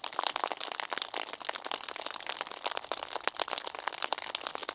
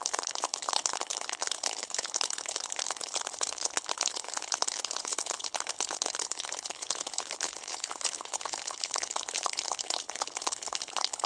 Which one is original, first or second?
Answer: first